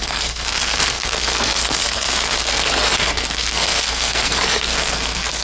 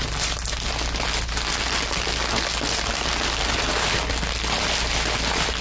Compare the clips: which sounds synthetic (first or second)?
first